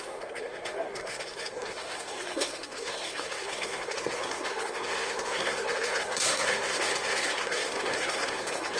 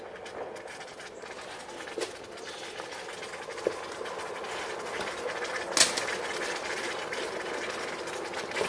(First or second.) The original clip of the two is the second